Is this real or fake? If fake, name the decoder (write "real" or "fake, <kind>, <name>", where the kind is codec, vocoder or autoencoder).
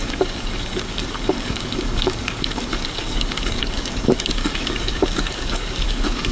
fake, codec, DAC